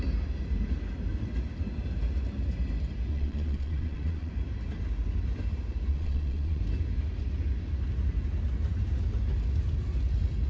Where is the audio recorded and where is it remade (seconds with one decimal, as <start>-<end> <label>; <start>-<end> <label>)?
0.0-3.1 recorded; 3.1-4.3 remade; 4.3-5.9 recorded; 5.9-6.6 remade; 6.6-10.5 recorded